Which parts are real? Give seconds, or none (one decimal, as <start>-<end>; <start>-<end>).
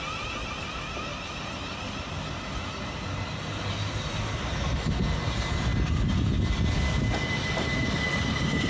0.0-8.7